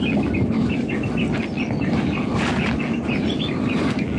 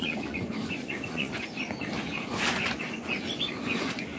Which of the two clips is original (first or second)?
first